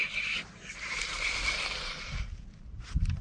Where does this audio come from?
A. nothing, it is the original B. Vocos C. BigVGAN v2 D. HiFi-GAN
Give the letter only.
C